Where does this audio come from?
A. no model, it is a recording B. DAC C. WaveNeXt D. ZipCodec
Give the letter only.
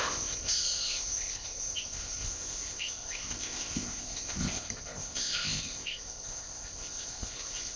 D